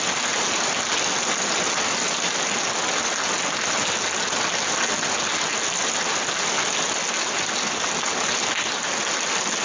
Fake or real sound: real